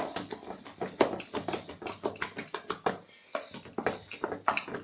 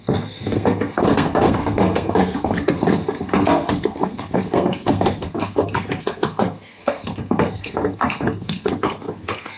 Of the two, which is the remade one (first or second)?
second